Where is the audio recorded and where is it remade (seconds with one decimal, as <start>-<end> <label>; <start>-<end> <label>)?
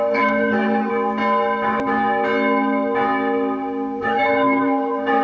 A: 0.0-0.9 remade; 0.9-4.0 recorded; 4.0-5.2 remade